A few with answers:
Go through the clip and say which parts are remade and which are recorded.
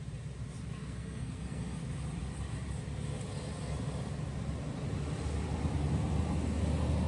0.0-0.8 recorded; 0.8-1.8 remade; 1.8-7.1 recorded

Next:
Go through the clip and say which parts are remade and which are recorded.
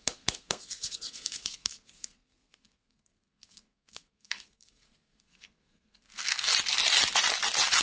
0.0-6.5 remade; 6.5-7.8 recorded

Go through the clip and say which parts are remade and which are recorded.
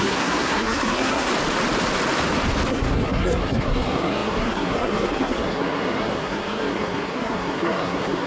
0.0-1.3 remade; 1.3-2.7 recorded; 2.7-8.3 remade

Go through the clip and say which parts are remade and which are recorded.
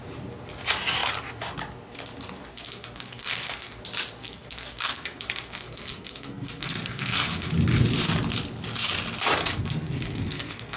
0.0-2.5 recorded; 2.5-3.8 remade; 3.8-4.2 recorded; 4.2-7.5 remade; 7.5-9.4 recorded; 9.4-10.8 remade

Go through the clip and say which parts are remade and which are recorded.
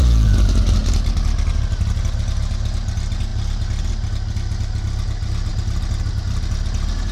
0.0-7.1 recorded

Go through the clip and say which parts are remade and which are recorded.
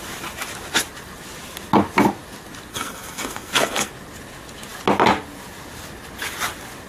0.0-2.7 recorded; 2.7-3.9 remade; 3.9-6.9 recorded